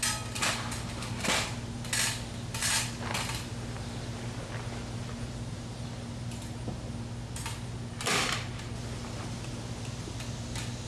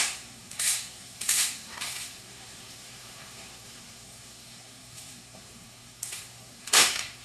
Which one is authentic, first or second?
first